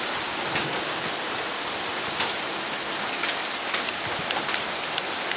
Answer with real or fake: real